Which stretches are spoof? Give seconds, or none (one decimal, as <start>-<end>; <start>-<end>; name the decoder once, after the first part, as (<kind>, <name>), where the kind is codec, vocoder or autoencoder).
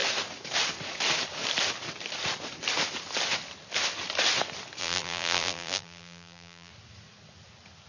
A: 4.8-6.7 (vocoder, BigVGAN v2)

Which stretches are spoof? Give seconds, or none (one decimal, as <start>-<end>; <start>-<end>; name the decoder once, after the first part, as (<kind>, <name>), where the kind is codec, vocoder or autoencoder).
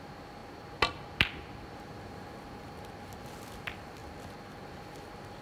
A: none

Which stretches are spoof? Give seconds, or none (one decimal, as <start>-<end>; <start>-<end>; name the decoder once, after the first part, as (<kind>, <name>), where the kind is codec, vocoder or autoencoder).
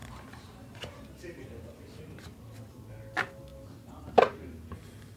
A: 0.0-2.2 (vocoder, BigVGAN v2)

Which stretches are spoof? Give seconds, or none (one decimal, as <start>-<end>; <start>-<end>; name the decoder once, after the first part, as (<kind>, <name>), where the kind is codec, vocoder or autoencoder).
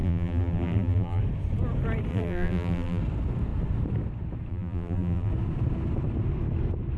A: 0.0-1.2 (vocoder, BigVGAN v2); 2.1-3.0; 4.5-5.3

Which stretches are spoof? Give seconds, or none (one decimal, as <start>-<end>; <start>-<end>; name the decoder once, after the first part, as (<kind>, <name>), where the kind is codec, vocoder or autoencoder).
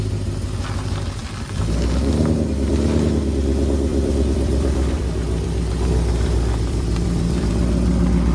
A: 3.9-7.5 (vocoder, BigVGAN v2)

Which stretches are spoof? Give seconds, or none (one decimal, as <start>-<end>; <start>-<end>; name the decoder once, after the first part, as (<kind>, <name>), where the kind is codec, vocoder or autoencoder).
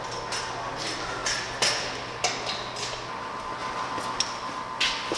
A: none